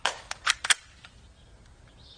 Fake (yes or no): no